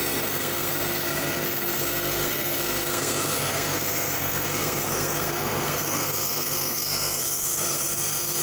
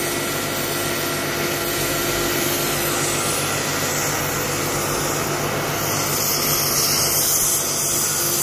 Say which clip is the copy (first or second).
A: first